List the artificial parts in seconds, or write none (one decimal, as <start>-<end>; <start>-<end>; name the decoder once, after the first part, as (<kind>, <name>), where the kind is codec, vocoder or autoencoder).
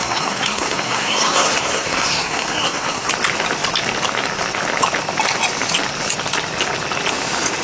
0.0-3.1 (codec, SNAC)